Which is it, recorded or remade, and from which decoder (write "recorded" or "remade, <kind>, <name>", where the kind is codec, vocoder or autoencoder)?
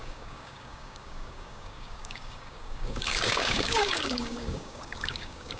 remade, codec, DAC